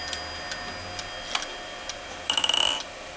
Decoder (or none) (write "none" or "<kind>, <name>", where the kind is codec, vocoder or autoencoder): none